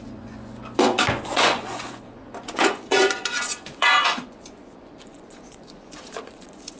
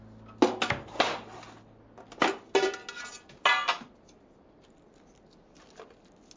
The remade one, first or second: first